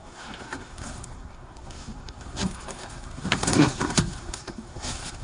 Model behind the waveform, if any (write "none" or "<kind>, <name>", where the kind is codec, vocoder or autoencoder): codec, SNAC